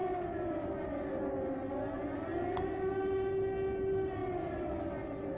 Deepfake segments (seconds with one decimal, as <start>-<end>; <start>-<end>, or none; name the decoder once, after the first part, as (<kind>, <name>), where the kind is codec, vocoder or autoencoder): none